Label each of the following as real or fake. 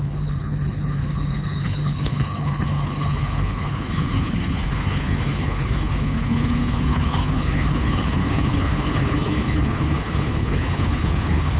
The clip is fake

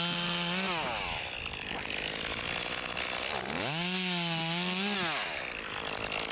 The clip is real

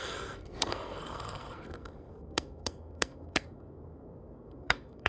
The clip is fake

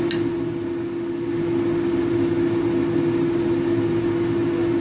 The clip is real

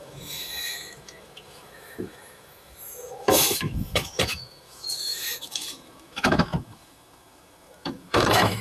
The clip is fake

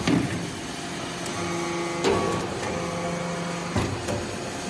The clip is real